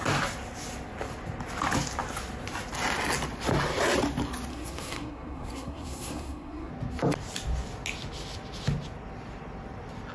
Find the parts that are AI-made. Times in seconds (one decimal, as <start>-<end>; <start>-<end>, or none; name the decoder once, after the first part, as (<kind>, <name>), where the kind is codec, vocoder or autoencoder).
4.5-6.7 (codec, SNAC)